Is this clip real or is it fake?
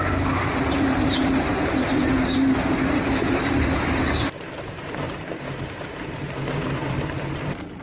fake